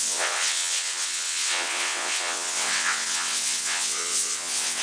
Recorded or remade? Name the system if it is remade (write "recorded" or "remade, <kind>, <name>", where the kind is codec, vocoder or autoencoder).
remade, vocoder, WaveNeXt